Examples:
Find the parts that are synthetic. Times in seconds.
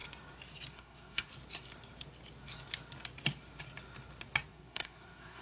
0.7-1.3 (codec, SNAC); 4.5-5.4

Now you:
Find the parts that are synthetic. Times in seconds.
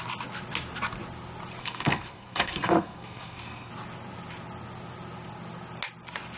1.6-3.7 (codec, SNAC)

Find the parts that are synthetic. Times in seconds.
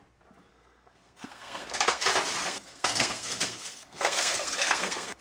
0.5-2.0 (codec, SNAC); 2.4-5.2